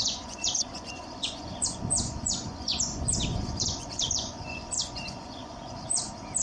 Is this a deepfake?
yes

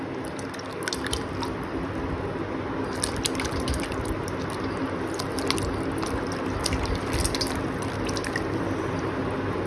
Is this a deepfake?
no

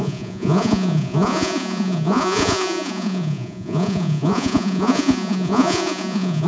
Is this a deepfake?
yes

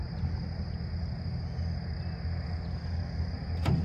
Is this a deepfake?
no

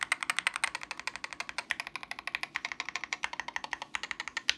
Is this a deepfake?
no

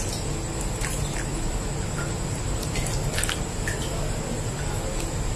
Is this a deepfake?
no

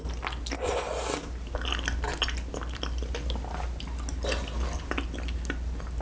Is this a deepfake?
no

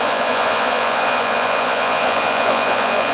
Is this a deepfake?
yes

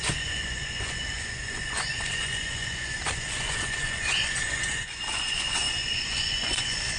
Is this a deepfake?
yes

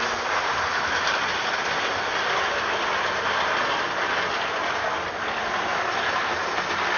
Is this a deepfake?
no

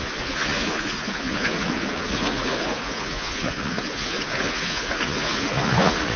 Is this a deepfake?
yes